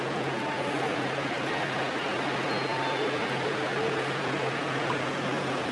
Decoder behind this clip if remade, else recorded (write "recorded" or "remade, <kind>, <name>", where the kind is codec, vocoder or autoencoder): recorded